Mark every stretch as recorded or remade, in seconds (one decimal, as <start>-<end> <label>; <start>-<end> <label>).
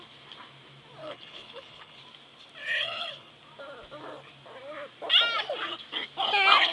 0.0-1.0 recorded; 1.0-2.0 remade; 2.0-2.6 recorded; 2.6-3.3 remade; 3.3-6.7 recorded